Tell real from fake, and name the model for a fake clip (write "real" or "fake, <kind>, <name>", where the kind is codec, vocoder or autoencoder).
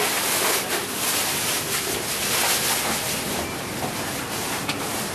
real